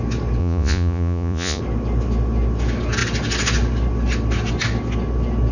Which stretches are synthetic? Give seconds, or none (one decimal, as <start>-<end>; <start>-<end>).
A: 0.4-1.6